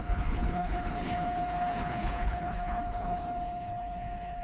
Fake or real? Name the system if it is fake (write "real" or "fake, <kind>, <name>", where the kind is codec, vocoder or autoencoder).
fake, codec, HILCodec